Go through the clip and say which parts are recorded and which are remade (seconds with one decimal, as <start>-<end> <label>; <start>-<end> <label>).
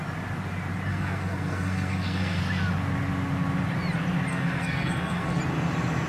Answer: 0.0-0.9 recorded; 0.9-2.4 remade; 2.4-4.3 recorded; 4.3-5.4 remade; 5.4-6.1 recorded